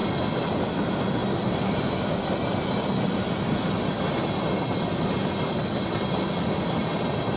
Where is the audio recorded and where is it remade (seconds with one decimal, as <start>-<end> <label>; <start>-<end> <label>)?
0.0-7.4 recorded